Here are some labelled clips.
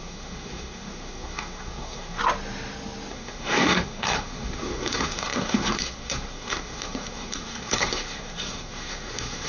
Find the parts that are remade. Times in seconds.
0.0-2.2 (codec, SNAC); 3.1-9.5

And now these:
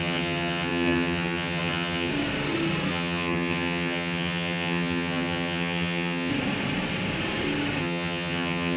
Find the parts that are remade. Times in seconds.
0.0-2.1 (vocoder, HiFi-GAN); 2.9-6.3; 7.8-8.8